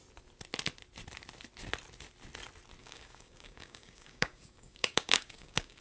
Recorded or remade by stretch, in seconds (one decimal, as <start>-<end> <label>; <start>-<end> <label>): 0.0-2.8 recorded; 2.8-5.8 remade